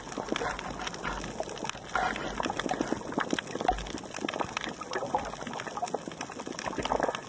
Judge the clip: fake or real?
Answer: real